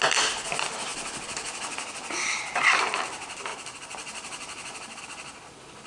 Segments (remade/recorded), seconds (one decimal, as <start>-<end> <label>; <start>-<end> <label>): 0.0-3.5 recorded; 3.5-5.0 remade; 5.0-5.9 recorded